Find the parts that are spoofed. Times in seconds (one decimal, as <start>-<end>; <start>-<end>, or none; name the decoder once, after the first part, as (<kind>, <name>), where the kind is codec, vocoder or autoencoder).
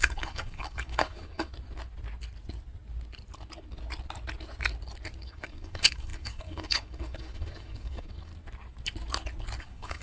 0.0-1.5 (codec, DAC); 5.2-8.3; 9.6-10.0